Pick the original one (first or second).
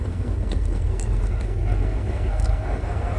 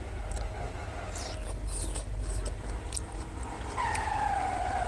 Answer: second